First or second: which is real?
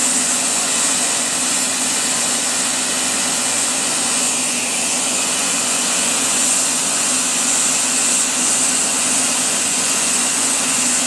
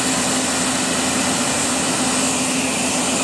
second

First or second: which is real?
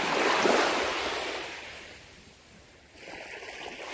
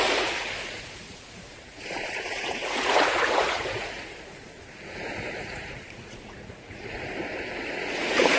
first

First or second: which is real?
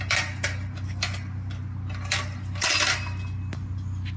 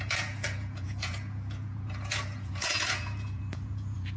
first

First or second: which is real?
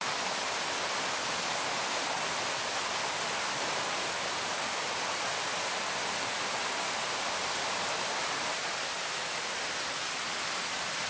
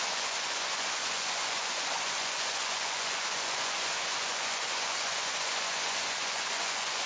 first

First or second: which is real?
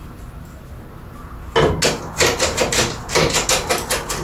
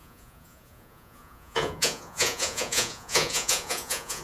first